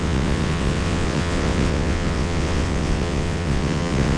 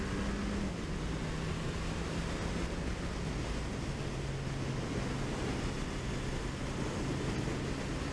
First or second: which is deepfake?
first